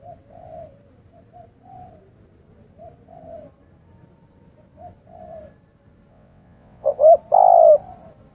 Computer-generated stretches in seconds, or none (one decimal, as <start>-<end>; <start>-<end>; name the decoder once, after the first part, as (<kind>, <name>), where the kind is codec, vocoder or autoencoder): 6.1-7.0 (vocoder, WaveNeXt)

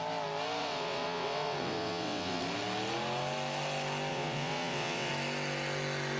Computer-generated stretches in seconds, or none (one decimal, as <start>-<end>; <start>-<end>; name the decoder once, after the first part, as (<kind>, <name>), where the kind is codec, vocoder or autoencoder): 0.6-2.4 (vocoder, WaveNeXt); 4.1-5.1

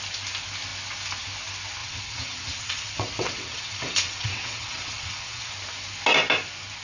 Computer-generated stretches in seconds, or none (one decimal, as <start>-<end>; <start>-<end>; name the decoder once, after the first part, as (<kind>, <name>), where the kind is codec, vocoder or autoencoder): 1.8-5.5 (vocoder, WaveNeXt)

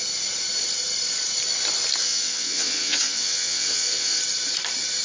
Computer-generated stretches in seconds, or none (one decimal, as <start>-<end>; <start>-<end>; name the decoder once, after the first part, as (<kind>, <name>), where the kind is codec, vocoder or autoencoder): 2.0-4.2 (vocoder, WaveNeXt)

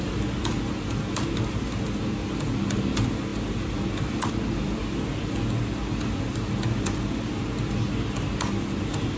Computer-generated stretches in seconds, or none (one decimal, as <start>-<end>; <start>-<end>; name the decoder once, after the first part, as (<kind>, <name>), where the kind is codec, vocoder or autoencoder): none

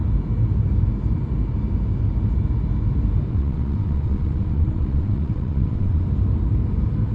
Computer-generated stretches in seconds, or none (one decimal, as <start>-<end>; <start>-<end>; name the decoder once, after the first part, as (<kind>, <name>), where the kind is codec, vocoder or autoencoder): 3.3-6.0 (vocoder, WaveNeXt)

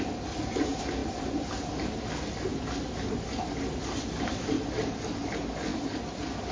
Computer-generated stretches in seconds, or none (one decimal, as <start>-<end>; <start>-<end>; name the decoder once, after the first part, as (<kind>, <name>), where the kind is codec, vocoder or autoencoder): none

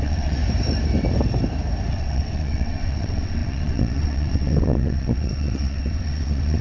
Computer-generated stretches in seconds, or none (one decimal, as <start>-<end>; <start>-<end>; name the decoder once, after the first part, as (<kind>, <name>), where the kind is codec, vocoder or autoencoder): 0.0-0.4 (vocoder, WaveNeXt); 1.9-6.6